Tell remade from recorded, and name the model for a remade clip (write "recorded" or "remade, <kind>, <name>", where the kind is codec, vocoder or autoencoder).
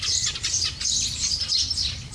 recorded